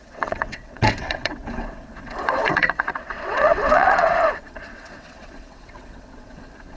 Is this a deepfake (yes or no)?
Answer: yes